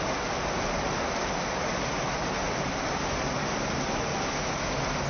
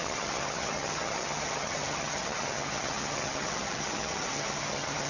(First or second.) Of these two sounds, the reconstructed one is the second